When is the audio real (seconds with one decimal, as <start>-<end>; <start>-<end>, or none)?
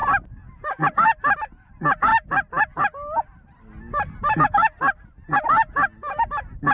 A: 0.0-6.7